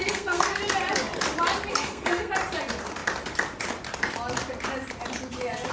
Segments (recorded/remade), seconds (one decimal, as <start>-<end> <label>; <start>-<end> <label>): 0.0-0.6 remade; 0.6-1.7 recorded; 1.7-2.3 remade; 2.3-5.7 recorded